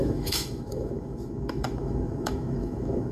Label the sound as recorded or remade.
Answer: remade